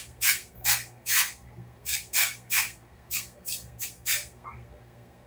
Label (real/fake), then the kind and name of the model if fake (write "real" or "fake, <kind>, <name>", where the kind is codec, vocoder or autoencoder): fake, codec, SNAC